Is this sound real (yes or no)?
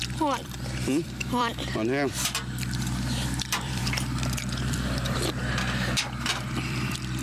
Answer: no